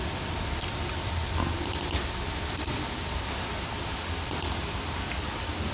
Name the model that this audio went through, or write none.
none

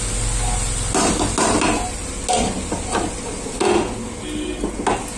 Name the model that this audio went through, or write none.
none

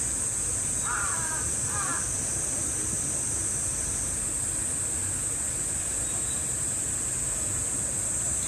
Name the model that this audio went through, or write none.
none